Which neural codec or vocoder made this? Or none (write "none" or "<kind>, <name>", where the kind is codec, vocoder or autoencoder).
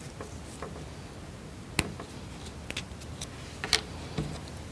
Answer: none